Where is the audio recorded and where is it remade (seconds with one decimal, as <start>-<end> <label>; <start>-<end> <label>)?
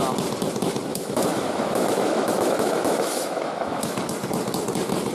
0.0-0.9 recorded; 0.9-4.0 remade; 4.0-5.1 recorded